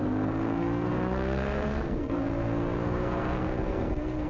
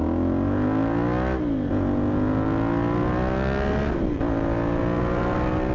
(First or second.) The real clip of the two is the second